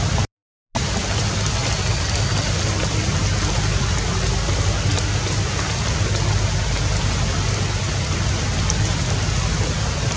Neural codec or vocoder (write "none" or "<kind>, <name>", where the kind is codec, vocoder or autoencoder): none